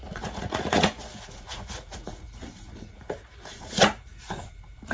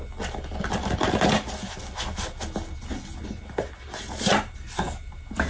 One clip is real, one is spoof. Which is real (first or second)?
second